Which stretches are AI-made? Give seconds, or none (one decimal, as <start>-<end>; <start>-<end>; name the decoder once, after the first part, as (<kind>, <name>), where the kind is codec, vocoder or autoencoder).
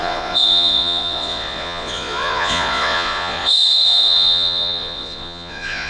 0.0-5.9 (vocoder, Vocos)